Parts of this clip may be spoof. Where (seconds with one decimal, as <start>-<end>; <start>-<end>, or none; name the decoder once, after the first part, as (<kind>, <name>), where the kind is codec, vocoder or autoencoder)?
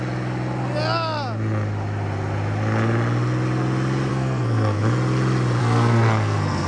4.1-4.8 (codec, SNAC); 5.6-6.7